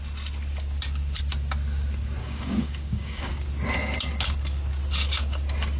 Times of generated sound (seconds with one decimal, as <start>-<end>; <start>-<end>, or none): 2.2-3.3